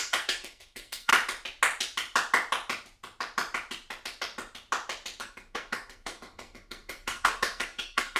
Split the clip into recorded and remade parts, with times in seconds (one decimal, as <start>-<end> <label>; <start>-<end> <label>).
0.0-1.1 remade; 1.1-5.2 recorded; 5.2-8.2 remade